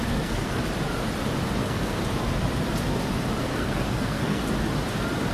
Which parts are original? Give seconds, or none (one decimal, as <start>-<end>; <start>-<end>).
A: 0.6-1.6; 2.0-3.4; 4.4-5.3